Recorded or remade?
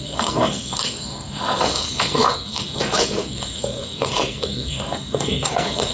remade